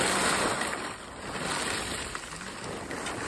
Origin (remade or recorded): recorded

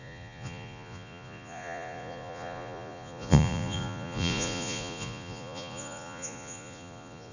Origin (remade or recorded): remade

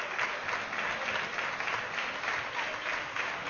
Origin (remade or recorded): recorded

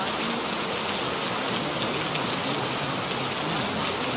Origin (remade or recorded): recorded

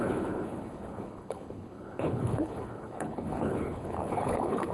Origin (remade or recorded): remade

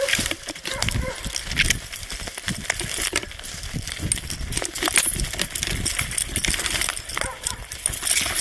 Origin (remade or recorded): recorded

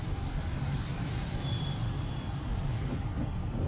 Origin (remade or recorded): remade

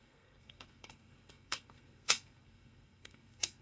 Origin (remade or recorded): remade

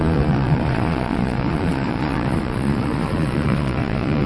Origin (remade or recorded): remade